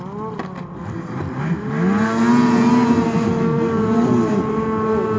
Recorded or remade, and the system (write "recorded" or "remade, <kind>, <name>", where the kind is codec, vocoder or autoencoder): recorded